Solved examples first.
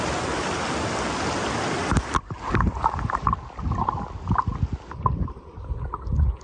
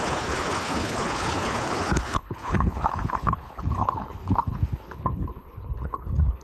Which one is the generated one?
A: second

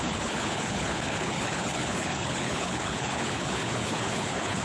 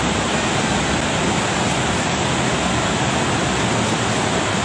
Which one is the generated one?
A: first